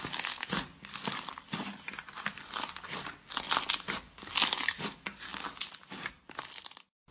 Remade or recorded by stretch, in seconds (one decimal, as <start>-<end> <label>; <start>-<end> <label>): 0.0-7.1 recorded